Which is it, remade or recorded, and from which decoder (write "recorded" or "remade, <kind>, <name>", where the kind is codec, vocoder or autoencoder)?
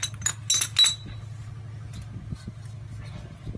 recorded